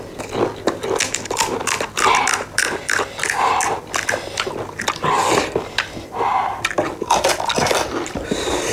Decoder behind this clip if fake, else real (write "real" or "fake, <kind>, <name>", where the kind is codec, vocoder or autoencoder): real